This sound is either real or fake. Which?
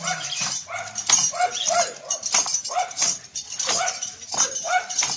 real